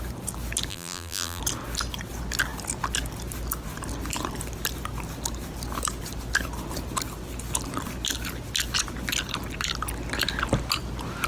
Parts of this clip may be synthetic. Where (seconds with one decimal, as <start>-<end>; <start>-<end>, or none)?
0.7-1.4